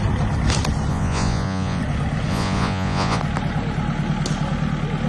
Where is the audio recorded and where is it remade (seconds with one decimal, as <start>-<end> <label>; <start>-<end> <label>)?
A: 0.0-0.9 recorded; 0.9-1.8 remade; 1.8-2.3 recorded; 2.3-3.2 remade; 3.2-5.1 recorded